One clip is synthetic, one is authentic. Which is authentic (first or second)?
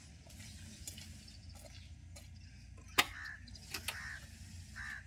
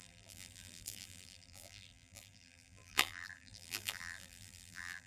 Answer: first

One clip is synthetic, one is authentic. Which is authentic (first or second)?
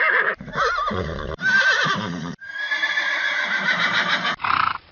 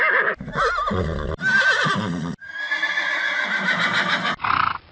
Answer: second